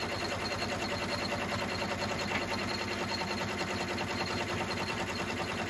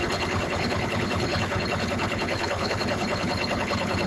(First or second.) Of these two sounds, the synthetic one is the second